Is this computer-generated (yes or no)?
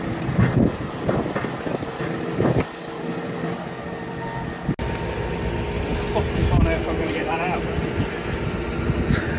no